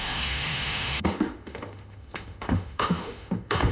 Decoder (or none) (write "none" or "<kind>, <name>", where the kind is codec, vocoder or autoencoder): autoencoder, DAC-VAE